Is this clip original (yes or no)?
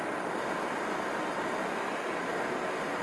yes